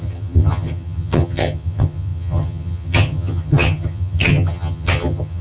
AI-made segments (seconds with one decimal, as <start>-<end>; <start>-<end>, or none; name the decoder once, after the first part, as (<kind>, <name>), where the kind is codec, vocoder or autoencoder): 0.0-5.4 (vocoder, HiFi-GAN)